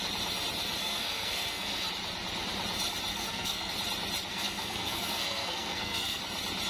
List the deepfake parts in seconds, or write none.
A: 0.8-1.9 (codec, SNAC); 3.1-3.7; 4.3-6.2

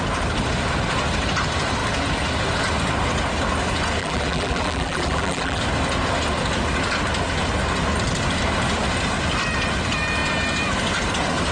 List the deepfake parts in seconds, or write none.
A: 4.0-5.6 (vocoder, BigVGAN v2)

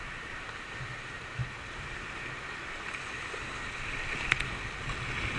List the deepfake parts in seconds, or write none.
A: none

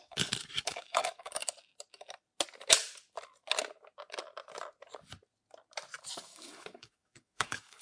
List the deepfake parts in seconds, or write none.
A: 0.0-1.4 (codec, DAC); 6.1-7.8

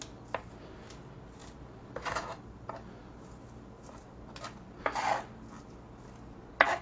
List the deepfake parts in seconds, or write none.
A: none

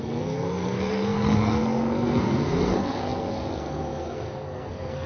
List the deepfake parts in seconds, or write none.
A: 0.0-5.1 (codec, SNAC)

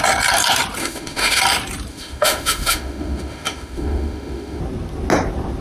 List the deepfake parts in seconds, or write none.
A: 0.8-1.4 (autoencoder, DAC-VAE); 1.9-4.6

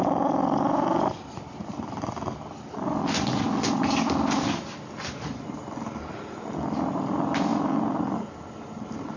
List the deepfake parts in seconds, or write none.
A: none